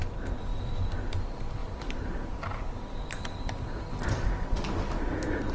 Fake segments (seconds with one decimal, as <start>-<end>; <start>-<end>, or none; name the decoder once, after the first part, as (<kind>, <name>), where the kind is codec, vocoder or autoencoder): 1.6-4.7 (vocoder, BigVGAN v2)